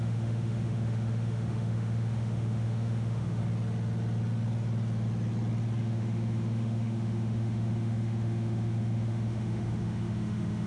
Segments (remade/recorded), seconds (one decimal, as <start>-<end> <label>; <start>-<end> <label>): 0.0-3.4 remade; 3.4-5.8 recorded; 5.8-10.7 remade